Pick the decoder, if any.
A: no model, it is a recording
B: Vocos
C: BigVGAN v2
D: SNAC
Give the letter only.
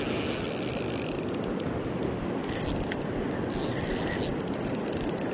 A